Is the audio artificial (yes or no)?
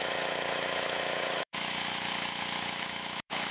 yes